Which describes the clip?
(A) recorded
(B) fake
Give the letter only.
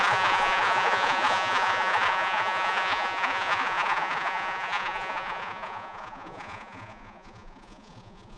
B